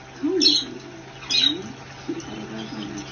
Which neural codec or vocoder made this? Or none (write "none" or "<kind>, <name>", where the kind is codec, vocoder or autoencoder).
none